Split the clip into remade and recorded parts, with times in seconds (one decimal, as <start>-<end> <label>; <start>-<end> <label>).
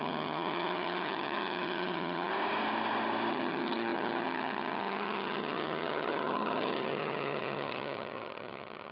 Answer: 0.0-2.3 remade; 2.3-3.3 recorded; 3.3-8.9 remade